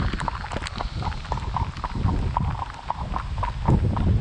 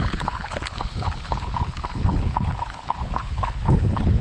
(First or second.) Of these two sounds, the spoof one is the second